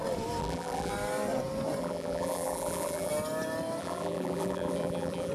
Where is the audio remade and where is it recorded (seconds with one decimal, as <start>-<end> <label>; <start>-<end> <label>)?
0.0-0.4 recorded; 0.4-0.9 remade; 0.9-1.8 recorded; 1.8-3.1 remade; 3.1-3.8 recorded; 3.8-5.3 remade